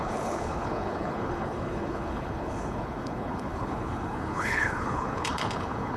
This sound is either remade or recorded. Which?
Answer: remade